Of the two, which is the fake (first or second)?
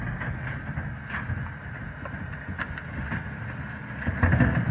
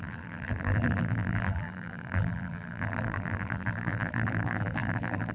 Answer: second